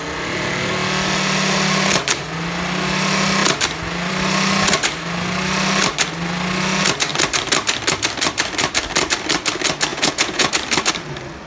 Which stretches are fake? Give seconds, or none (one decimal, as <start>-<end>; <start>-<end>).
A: 9.9-10.5